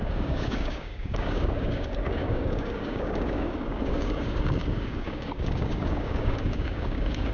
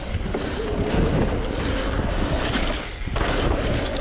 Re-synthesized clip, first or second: first